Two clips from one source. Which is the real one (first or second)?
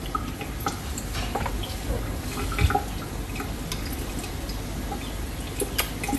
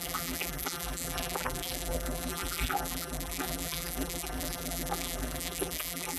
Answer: first